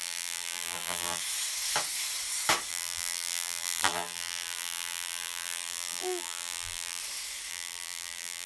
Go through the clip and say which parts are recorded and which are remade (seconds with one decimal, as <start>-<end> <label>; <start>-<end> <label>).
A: 0.0-1.2 remade; 1.2-2.7 recorded; 2.7-7.0 remade; 7.0-7.5 recorded; 7.5-8.5 remade